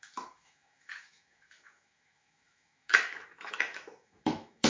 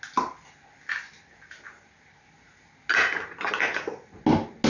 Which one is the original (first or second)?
second